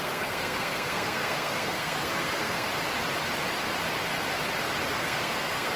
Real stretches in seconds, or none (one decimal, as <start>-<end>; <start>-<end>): 2.7-4.9